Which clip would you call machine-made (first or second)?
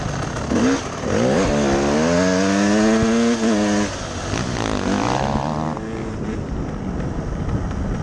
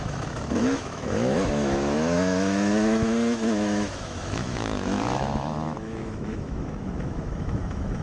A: second